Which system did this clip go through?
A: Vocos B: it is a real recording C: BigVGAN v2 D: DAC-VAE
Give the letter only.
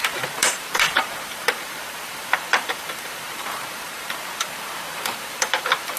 C